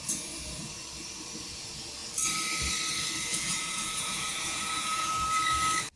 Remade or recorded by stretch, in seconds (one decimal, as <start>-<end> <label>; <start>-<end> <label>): 0.0-3.3 recorded; 3.3-5.1 remade; 5.1-6.0 recorded